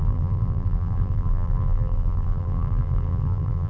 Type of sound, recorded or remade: remade